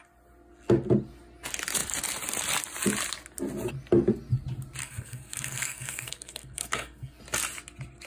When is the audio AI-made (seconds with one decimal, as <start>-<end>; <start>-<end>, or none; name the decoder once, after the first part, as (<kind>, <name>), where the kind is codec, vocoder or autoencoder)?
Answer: 4.8-7.2 (codec, SNAC)